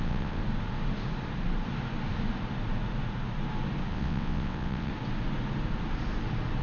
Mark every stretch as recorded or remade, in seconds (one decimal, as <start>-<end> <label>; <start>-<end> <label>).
0.0-0.4 remade; 0.4-3.9 recorded; 3.9-4.9 remade; 4.9-6.6 recorded